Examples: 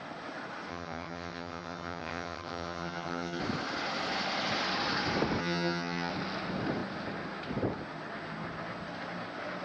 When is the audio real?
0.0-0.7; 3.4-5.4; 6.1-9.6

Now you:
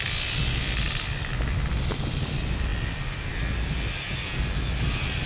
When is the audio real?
0.0-5.3

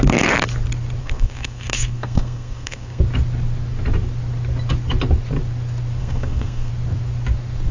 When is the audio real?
0.0-1.0; 3.0-6.0; 6.7-7.7

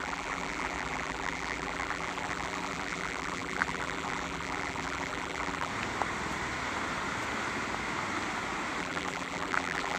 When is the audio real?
5.7-8.8